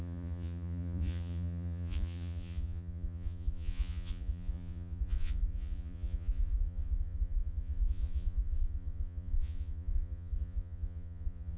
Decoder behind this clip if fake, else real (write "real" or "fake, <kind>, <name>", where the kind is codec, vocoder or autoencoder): fake, vocoder, Vocos